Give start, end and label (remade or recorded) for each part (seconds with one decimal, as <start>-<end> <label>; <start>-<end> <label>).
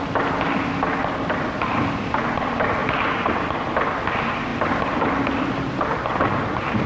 0.0-6.9 recorded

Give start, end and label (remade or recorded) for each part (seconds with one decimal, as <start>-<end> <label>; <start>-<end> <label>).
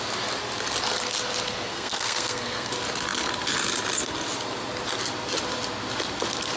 0.0-1.7 recorded; 1.7-2.7 remade; 2.7-6.6 recorded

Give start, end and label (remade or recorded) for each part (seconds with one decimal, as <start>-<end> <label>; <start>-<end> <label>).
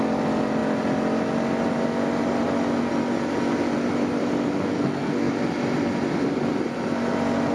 0.0-4.7 recorded; 4.7-5.3 remade; 5.3-7.5 recorded